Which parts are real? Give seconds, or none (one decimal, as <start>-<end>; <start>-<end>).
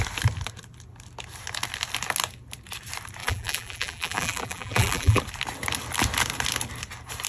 0.0-3.2; 5.2-7.3